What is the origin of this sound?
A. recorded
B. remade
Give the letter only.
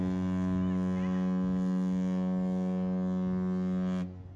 A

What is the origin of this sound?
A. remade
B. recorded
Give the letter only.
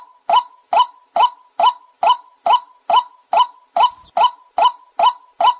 B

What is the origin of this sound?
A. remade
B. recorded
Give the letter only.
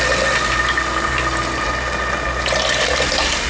B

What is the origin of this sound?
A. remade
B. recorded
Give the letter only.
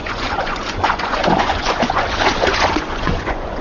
A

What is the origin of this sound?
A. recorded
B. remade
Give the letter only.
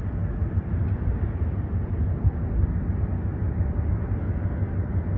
A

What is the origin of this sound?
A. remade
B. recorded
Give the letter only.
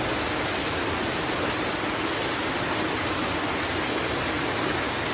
B